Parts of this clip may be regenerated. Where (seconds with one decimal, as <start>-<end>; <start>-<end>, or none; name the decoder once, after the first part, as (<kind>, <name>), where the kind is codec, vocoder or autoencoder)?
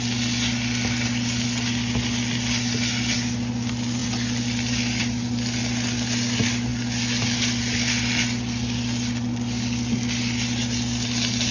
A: none